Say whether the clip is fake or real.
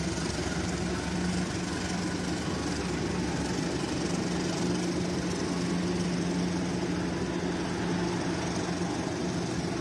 real